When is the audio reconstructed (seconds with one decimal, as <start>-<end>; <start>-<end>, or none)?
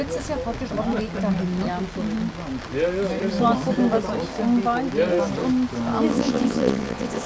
6.1-7.3